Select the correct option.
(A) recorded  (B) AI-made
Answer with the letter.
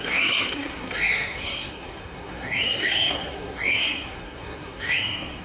B